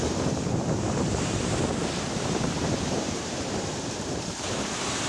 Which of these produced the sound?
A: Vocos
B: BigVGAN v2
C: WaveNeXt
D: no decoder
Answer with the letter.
B